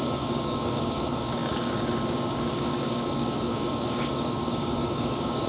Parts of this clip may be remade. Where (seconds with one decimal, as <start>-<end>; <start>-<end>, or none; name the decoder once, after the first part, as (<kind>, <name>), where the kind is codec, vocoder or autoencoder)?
0.0-5.5 (codec, DAC)